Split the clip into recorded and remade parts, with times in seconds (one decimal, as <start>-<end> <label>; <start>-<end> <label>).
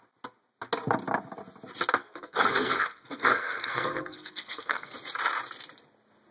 0.0-2.0 recorded; 2.0-4.9 remade; 4.9-6.3 recorded